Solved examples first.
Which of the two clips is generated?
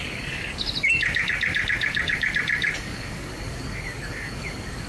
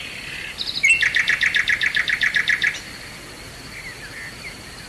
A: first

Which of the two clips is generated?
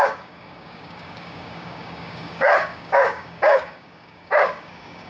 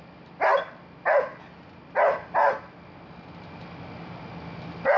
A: first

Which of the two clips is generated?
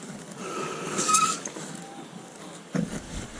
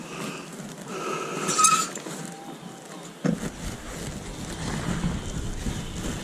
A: first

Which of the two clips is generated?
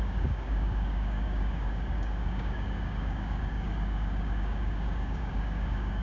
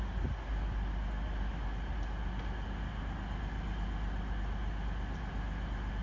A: first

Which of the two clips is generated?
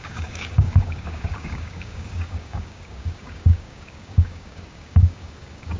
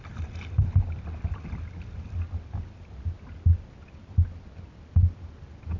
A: first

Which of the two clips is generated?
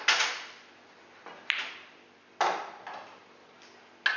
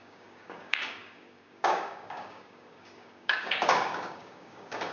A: second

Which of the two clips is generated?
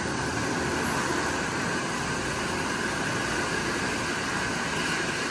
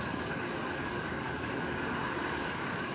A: second